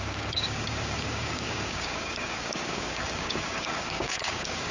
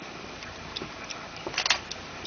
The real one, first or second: second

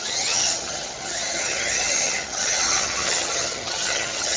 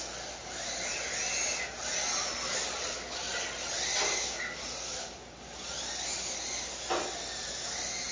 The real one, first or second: second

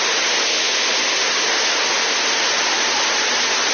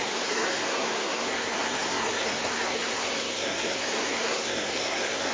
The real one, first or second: first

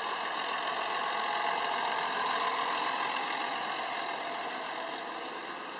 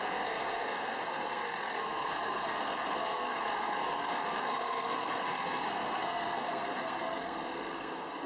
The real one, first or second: first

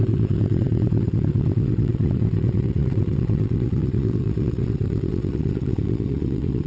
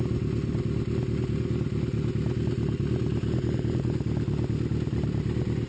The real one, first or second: second